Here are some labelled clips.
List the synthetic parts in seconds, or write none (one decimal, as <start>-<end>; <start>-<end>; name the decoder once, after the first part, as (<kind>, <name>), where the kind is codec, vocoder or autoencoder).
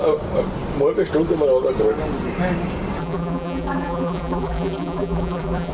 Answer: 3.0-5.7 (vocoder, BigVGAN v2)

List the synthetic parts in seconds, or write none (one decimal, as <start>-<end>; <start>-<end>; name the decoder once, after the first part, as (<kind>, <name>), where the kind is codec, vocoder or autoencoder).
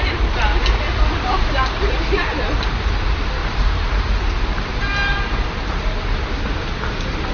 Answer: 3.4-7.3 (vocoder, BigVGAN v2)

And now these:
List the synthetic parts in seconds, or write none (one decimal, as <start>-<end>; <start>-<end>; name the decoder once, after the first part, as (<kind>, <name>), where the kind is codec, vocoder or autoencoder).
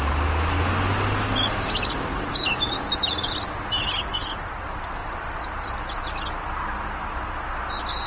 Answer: none